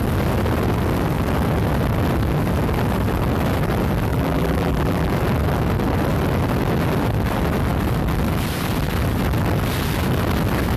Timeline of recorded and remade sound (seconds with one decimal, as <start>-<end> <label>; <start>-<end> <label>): 0.0-4.1 recorded; 4.1-5.1 remade; 5.1-10.8 recorded